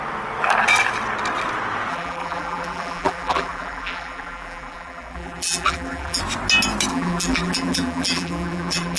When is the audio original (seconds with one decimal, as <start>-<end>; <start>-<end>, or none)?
0.0-1.9; 6.2-6.9